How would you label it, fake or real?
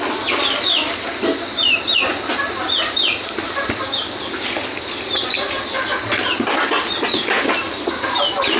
real